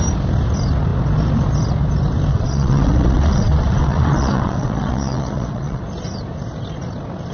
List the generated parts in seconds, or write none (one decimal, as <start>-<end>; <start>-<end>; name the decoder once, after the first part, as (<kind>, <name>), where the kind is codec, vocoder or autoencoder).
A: 2.3-5.8 (vocoder, WaveNeXt)